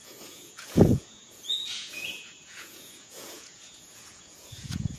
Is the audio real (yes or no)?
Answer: no